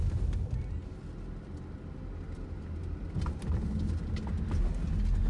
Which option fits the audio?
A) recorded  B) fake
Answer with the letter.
A